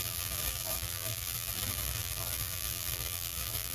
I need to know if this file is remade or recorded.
remade